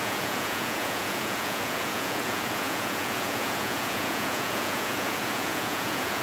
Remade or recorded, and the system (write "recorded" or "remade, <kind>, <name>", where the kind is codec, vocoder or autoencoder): remade, vocoder, Vocos